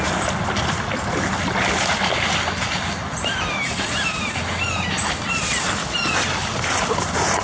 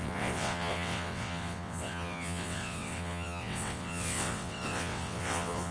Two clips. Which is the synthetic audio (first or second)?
second